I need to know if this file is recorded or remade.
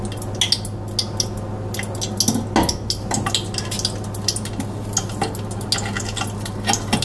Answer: recorded